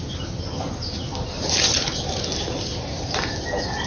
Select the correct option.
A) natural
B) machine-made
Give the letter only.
A